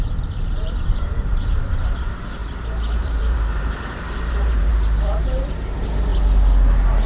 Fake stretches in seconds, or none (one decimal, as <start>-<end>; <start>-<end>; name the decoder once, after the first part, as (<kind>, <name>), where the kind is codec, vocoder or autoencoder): 0.0-4.7 (vocoder, BigVGAN v2); 5.2-6.1